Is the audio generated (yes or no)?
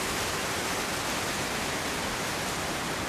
no